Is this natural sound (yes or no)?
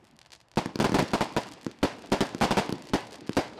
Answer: yes